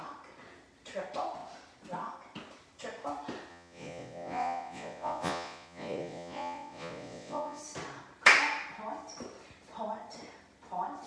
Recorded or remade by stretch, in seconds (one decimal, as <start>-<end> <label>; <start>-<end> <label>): 0.0-3.5 recorded; 3.5-7.6 remade; 7.6-11.1 recorded